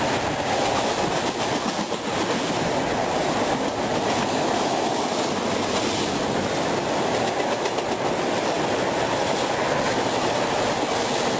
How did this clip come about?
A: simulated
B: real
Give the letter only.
B